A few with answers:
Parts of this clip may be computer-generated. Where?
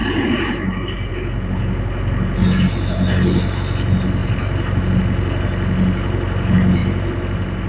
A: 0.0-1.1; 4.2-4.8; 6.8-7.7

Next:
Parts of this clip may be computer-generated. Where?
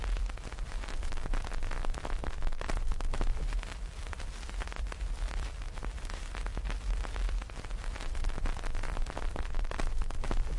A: 0.0-10.6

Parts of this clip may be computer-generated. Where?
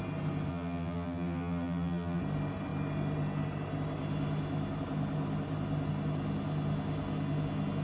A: 0.5-2.2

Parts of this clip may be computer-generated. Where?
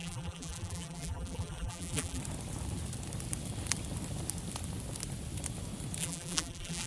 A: 0.0-2.2; 6.0-6.9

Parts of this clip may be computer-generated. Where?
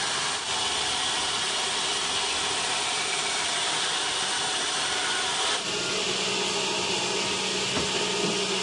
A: none